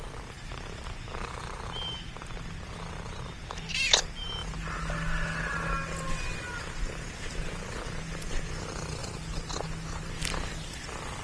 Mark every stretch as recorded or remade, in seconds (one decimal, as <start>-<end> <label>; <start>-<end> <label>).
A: 0.0-0.5 recorded; 0.5-2.4 remade; 2.4-11.2 recorded